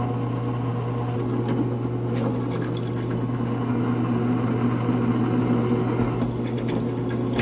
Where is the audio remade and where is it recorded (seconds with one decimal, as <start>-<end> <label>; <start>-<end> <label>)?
0.0-7.4 recorded